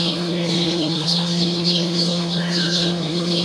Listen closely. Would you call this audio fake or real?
fake